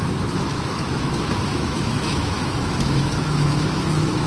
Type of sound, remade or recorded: remade